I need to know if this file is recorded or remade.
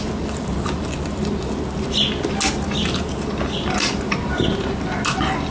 recorded